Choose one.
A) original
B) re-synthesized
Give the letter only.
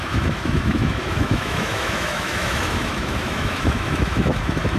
B